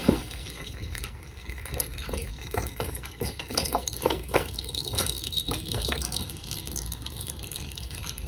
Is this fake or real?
fake